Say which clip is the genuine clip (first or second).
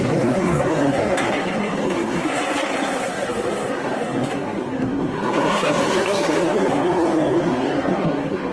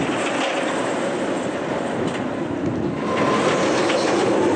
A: second